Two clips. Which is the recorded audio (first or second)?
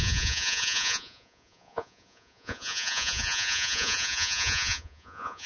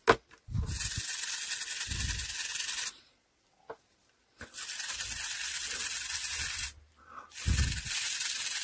second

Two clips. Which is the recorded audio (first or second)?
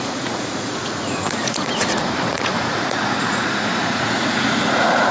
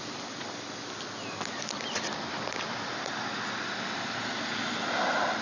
second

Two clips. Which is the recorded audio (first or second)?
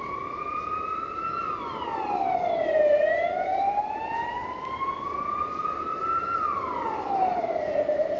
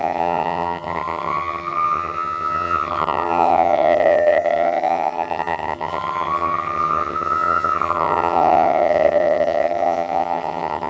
first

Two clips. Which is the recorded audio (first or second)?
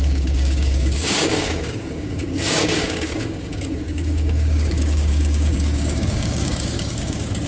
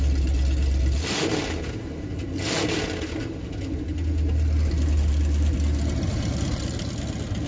second